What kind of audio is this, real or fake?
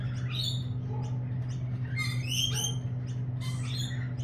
real